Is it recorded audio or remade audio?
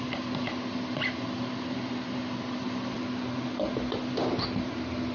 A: recorded